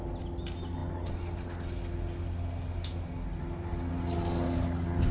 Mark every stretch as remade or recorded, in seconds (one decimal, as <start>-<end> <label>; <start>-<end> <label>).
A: 0.0-5.1 recorded